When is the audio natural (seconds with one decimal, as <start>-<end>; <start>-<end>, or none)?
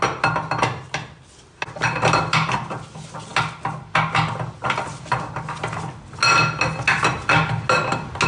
0.0-8.3